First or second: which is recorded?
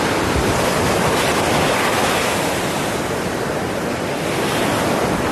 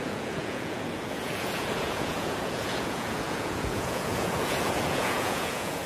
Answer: first